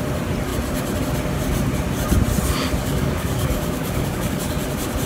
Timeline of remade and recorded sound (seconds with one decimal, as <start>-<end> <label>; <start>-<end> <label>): 0.0-2.8 recorded; 2.8-4.4 remade; 4.4-5.1 recorded